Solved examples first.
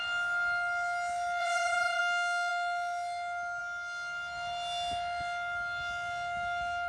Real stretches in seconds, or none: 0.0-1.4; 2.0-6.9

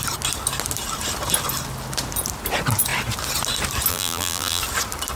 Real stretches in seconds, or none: 0.0-3.9; 4.6-5.2

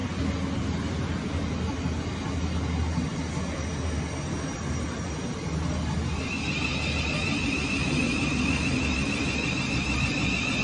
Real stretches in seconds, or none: 0.0-10.6